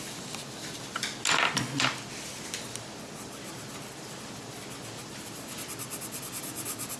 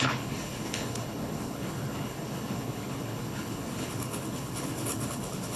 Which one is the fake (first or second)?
second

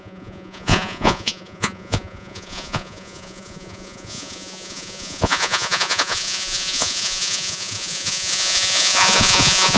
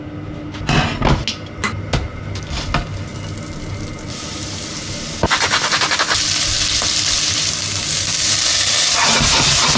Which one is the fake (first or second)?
first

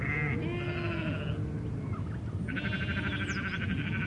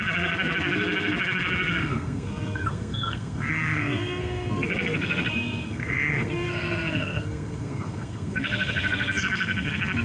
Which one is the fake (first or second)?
second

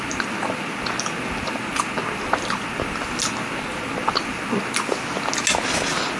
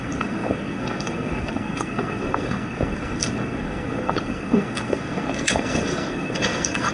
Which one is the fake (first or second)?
second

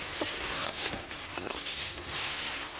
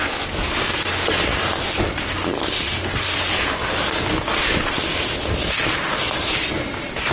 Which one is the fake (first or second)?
first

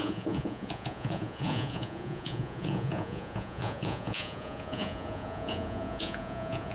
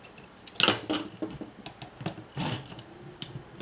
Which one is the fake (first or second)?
first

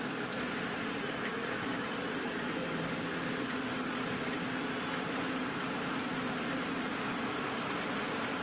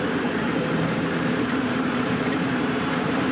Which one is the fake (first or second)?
second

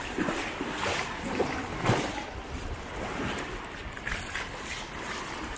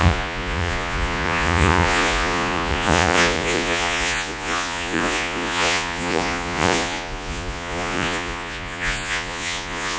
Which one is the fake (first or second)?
second